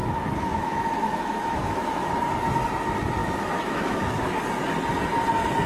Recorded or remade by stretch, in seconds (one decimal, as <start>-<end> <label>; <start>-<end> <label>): 0.0-2.1 remade; 2.1-3.2 recorded; 3.2-4.4 remade; 4.4-5.7 recorded